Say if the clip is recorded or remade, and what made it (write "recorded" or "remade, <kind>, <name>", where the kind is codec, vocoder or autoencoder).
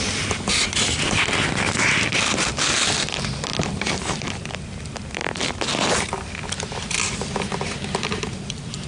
recorded